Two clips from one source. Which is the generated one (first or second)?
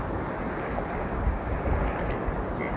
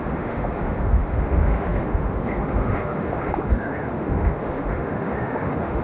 second